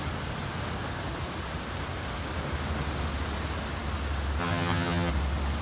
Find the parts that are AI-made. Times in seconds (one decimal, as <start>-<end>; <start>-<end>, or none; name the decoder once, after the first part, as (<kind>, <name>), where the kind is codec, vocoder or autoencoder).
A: 4.4-5.1 (vocoder, HiFi-GAN)